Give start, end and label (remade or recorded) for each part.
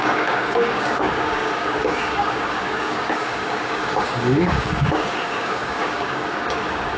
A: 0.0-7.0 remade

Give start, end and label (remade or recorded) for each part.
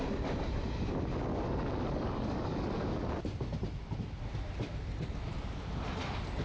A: 0.0-1.3 recorded; 1.3-3.0 remade; 3.0-6.4 recorded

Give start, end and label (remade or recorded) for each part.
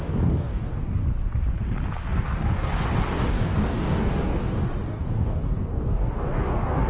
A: 0.0-1.0 remade; 1.0-2.1 recorded; 2.1-2.7 remade; 2.7-3.3 recorded; 3.3-6.9 remade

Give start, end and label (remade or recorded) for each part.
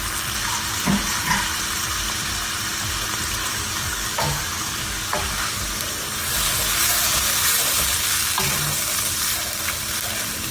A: 0.0-3.5 recorded; 3.5-5.6 remade; 5.6-10.5 recorded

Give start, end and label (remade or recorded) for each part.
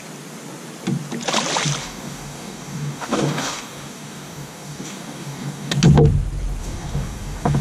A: 0.0-1.8 recorded; 1.8-5.7 remade; 5.7-6.6 recorded; 6.6-7.6 remade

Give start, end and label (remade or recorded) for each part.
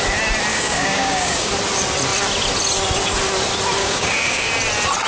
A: 0.0-0.5 recorded; 0.5-1.5 remade; 1.5-3.8 recorded; 3.8-4.5 remade; 4.5-5.1 recorded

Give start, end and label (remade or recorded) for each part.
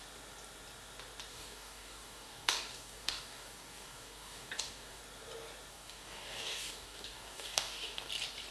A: 0.0-1.3 recorded; 1.3-5.0 remade; 5.0-5.7 recorded; 5.7-8.1 remade; 8.1-8.5 recorded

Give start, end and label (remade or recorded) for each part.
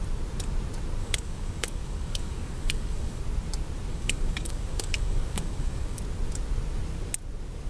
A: 0.0-1.0 recorded; 1.0-3.2 remade; 3.2-3.9 recorded; 3.9-6.0 remade; 6.0-7.7 recorded